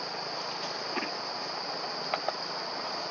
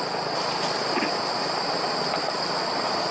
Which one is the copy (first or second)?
second